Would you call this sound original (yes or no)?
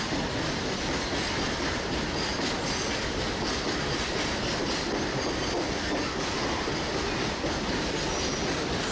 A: yes